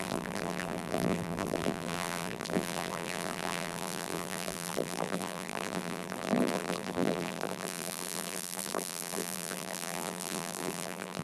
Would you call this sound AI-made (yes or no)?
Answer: yes